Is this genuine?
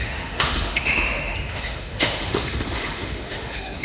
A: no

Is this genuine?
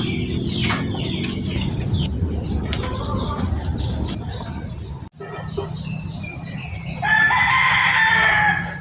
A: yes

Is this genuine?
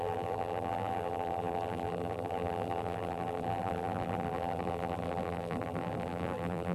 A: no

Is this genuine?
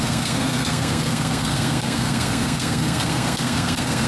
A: no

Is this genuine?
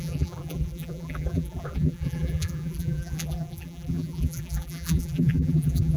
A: no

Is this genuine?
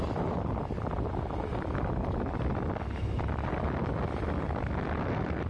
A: yes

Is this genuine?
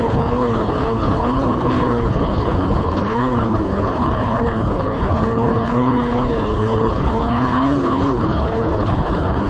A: no